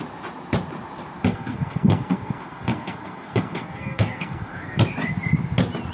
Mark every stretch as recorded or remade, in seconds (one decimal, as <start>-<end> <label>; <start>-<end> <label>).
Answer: 0.0-1.3 recorded; 1.3-4.8 remade; 4.8-5.9 recorded